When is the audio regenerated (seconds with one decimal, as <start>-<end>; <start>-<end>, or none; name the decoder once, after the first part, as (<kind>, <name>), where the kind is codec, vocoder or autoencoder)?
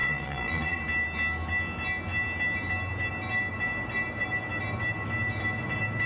0.0-0.8 (vocoder, Vocos)